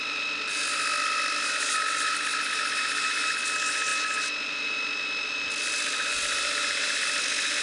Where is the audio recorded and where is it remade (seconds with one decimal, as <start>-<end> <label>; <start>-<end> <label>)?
0.0-7.6 recorded